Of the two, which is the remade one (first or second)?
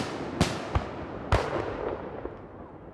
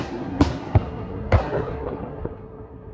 second